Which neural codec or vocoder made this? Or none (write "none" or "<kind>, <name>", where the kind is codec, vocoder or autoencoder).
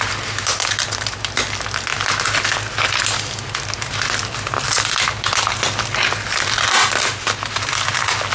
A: none